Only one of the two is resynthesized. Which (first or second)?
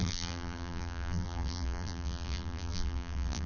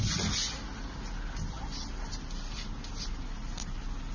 first